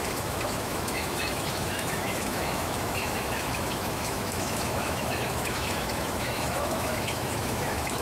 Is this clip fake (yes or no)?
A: yes